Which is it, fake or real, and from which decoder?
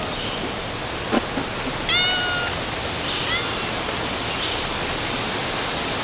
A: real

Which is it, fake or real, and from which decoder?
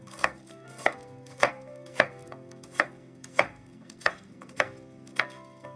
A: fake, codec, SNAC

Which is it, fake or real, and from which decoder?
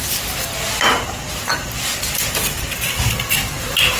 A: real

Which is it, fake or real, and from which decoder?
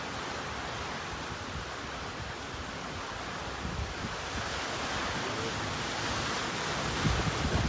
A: real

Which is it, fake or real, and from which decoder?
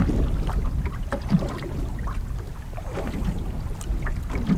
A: real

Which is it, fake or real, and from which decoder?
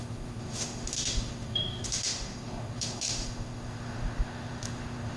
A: fake, autoencoder, DAC-VAE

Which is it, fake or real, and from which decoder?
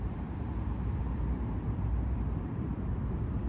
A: fake, vocoder, BigVGAN v2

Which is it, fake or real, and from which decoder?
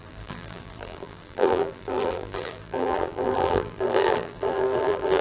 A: fake, vocoder, BigVGAN v2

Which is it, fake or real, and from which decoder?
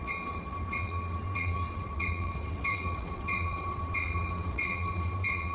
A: fake, vocoder, WaveNeXt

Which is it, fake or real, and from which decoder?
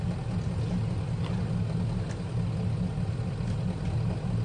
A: real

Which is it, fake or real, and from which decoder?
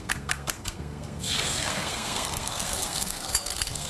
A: fake, codec, SNAC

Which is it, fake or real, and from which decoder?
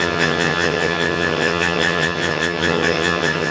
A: fake, vocoder, HiFi-GAN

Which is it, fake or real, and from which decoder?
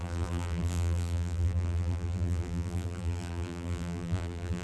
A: fake, vocoder, BigVGAN v2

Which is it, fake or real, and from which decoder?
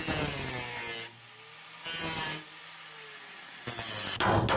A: real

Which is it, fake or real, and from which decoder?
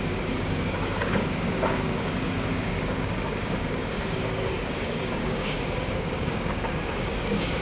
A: fake, codec, DAC